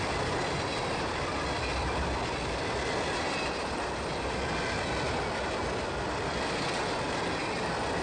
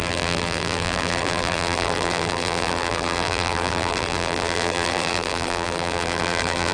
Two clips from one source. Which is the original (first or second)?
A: first